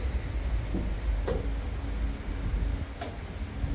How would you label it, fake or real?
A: real